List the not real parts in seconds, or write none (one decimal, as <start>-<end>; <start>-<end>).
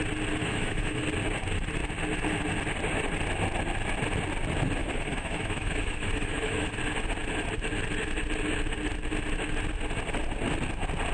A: 0.4-1.0; 4.8-6.7